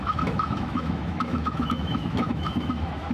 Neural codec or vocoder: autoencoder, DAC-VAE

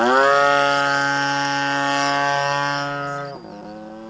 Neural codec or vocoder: none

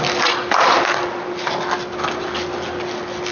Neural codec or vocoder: none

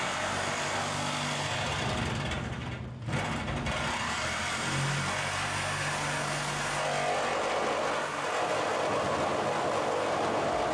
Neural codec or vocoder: none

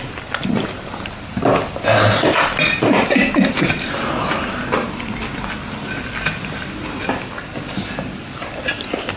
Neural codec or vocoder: none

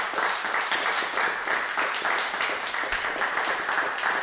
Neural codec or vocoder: none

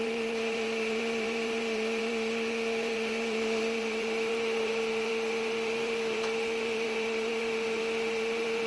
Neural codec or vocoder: vocoder, BigVGAN v2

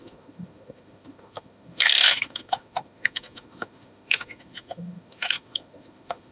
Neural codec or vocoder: autoencoder, DAC-VAE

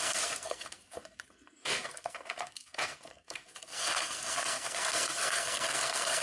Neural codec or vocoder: codec, SNAC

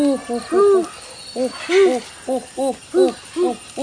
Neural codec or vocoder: none